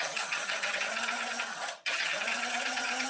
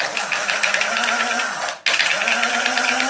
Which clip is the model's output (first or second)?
first